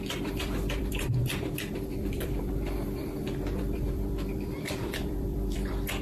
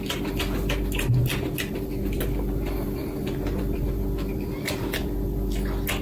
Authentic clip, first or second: second